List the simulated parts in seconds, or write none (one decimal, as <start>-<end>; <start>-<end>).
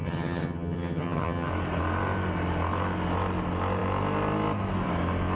0.0-1.5